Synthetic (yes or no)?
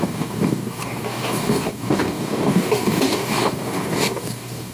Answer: yes